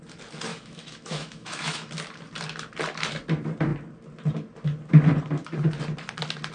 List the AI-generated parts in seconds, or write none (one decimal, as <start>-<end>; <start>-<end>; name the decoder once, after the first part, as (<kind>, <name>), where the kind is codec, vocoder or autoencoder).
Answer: 0.5-1.9 (autoencoder, DAC-VAE)